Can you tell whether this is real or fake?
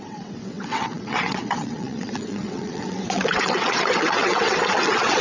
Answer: fake